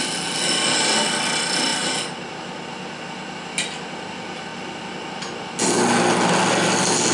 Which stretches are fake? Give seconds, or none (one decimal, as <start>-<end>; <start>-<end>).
none